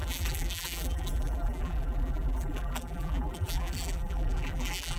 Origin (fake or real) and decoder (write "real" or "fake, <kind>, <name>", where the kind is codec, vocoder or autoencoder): fake, vocoder, BigVGAN v2